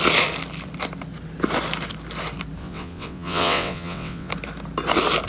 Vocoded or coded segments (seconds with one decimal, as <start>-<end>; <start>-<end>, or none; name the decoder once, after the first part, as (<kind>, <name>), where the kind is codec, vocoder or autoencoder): 2.6-4.3 (vocoder, WaveNeXt)

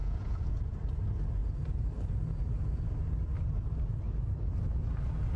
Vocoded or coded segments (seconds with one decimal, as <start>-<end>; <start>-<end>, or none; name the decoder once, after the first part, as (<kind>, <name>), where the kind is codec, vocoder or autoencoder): 0.0-0.6 (vocoder, Vocos)

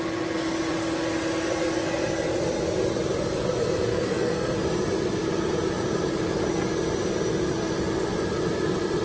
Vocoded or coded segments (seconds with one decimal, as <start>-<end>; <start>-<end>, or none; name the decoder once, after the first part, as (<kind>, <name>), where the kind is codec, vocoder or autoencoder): 3.9-4.5 (codec, SNAC)